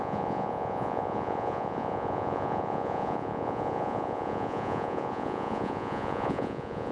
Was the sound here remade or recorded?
remade